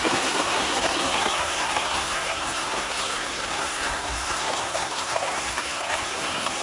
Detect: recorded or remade remade